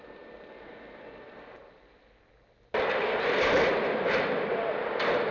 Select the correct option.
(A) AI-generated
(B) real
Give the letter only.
B